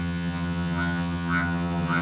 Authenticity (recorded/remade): remade